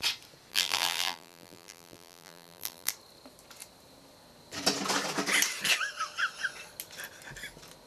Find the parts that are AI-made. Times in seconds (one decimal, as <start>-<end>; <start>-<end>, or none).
0.5-2.9